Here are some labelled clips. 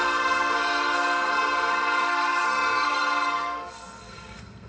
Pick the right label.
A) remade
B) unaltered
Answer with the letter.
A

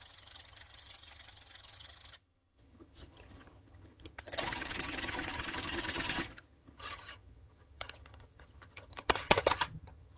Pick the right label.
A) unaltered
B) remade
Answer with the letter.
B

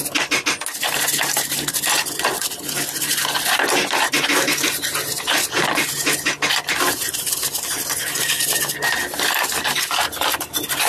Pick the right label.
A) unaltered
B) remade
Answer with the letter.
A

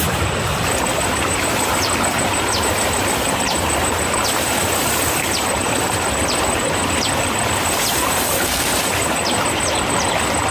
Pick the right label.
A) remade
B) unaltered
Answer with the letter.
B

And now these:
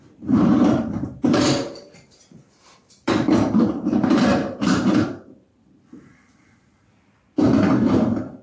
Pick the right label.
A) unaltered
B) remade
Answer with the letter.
B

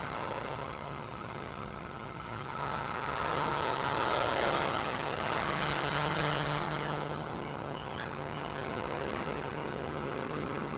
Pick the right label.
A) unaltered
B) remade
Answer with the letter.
B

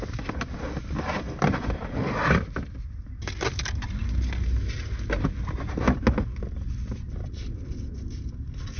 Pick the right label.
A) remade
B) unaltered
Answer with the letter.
B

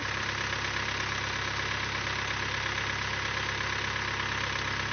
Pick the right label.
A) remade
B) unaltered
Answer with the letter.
B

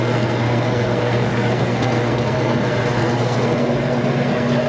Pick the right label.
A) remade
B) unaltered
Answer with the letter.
A